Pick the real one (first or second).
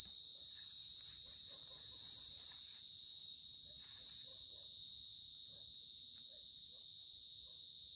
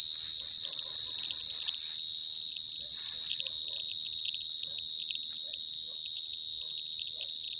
second